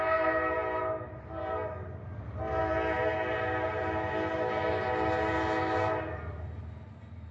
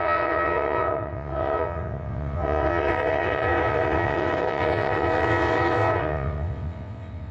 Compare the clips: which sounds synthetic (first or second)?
second